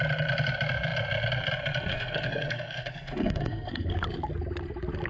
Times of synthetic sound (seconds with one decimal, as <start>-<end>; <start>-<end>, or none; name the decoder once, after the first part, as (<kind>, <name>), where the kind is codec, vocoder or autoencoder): 1.9-3.9 (codec, SNAC)